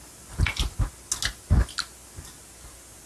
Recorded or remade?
recorded